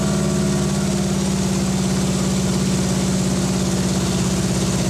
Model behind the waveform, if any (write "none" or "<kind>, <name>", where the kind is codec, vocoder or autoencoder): none